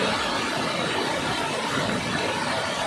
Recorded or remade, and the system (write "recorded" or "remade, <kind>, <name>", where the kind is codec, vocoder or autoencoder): recorded